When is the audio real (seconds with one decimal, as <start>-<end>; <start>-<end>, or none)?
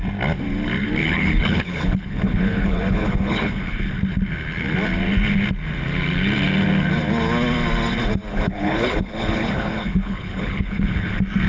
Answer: 0.0-1.0; 3.9-8.3; 11.1-11.5